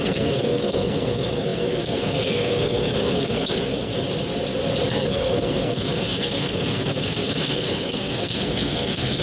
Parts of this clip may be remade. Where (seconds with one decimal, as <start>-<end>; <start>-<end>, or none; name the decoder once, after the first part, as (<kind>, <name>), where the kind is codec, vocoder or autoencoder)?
0.0-3.9 (codec, SNAC); 4.9-9.2